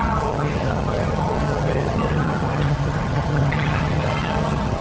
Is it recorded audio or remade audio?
remade